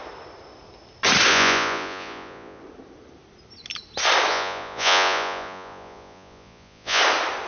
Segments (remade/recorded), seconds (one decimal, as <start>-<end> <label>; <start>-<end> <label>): 0.0-1.3 recorded; 1.3-2.6 remade; 2.6-4.3 recorded; 4.3-7.0 remade; 7.0-7.5 recorded